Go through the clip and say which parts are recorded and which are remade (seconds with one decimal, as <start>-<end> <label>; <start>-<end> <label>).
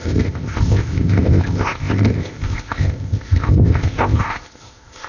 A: 0.0-5.1 remade